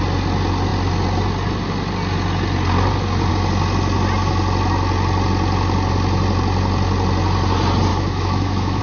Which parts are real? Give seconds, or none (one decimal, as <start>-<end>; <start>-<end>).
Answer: 0.0-7.9